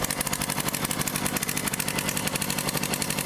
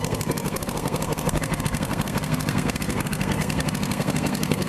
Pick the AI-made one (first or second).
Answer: second